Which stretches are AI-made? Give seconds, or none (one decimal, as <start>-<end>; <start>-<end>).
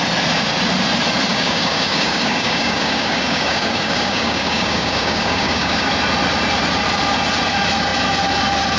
1.3-5.9